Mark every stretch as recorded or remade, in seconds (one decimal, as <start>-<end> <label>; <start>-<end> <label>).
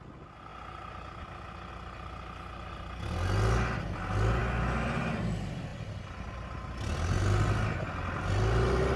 0.0-9.0 recorded